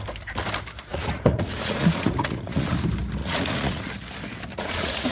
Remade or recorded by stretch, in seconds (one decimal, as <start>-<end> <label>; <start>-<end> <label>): 0.0-0.9 recorded; 0.9-2.7 remade; 2.7-3.2 recorded; 3.2-3.9 remade; 3.9-4.5 recorded; 4.5-5.1 remade